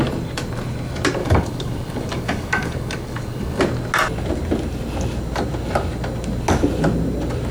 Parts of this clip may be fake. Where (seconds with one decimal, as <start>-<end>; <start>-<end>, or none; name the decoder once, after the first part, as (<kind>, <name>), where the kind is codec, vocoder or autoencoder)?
1.2-3.6 (codec, DAC)